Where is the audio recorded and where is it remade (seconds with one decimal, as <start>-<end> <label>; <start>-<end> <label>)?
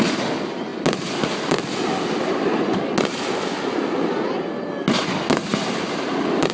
0.0-6.5 recorded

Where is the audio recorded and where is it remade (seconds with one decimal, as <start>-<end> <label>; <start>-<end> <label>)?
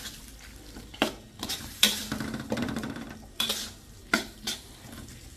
0.0-0.9 recorded; 0.9-3.5 remade; 3.5-5.4 recorded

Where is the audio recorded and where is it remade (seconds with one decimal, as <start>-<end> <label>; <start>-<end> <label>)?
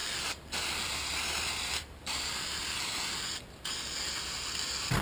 0.0-3.0 remade; 3.0-5.0 recorded